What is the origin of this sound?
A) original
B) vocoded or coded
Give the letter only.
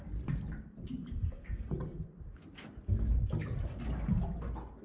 A